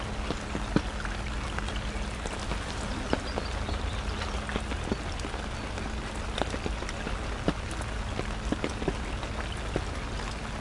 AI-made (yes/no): no